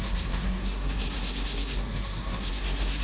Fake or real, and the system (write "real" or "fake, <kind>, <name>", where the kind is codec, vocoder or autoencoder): fake, codec, SNAC